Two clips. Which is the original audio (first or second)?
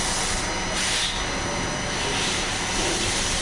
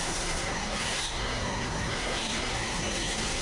first